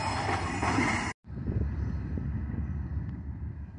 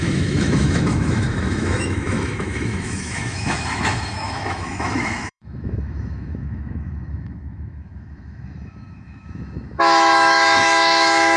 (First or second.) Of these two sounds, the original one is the first